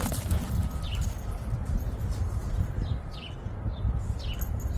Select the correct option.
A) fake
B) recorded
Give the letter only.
B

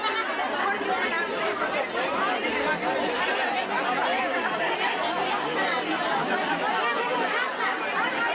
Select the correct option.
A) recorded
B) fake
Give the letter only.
A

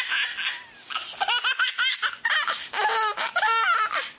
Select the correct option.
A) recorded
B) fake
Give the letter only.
A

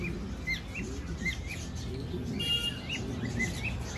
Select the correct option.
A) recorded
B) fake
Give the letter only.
A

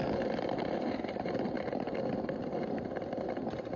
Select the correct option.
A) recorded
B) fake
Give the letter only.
B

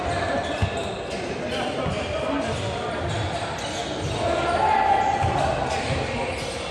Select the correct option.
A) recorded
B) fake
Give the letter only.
A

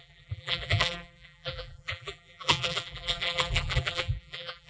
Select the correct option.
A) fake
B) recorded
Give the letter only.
A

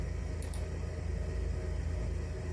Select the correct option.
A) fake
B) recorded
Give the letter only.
B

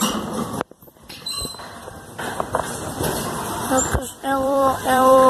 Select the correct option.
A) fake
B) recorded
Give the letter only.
A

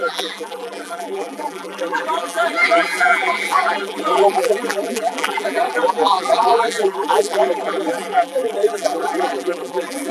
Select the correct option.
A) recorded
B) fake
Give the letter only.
B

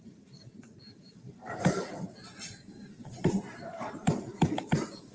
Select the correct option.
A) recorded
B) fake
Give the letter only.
B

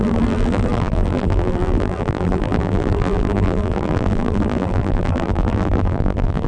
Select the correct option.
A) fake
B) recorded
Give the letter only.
A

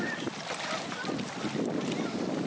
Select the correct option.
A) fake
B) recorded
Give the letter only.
B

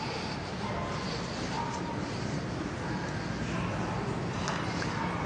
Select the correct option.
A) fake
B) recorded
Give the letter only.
B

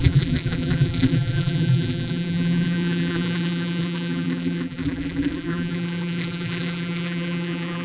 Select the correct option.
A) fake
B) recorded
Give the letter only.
A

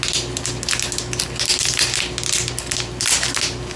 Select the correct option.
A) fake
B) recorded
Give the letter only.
B